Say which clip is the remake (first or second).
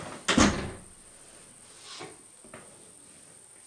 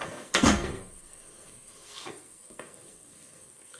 second